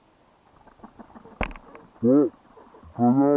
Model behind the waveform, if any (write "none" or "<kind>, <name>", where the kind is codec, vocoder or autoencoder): none